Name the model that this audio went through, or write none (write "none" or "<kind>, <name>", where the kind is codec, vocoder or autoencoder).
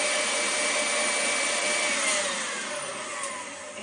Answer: none